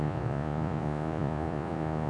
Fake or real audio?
fake